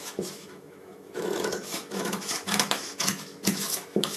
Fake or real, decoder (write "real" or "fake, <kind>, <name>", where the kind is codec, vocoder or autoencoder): fake, autoencoder, DAC-VAE